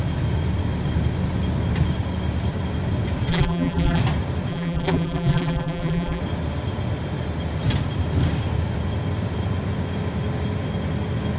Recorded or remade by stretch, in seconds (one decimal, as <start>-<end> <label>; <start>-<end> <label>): 0.0-3.3 recorded; 3.3-4.0 remade; 4.0-4.5 recorded; 4.5-6.2 remade; 6.2-11.4 recorded